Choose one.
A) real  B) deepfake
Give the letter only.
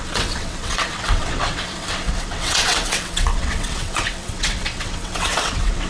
B